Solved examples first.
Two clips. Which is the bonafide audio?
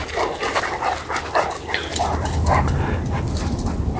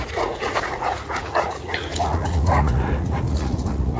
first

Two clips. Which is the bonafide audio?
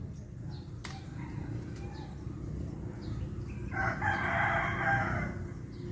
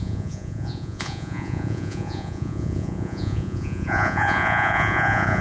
first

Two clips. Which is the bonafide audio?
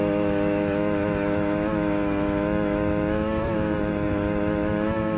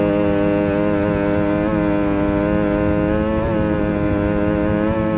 second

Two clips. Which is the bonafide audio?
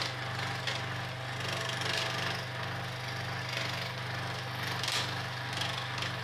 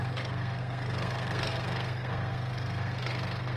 first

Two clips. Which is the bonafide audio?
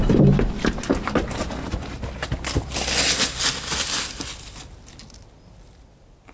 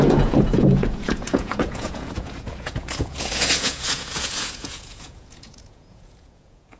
first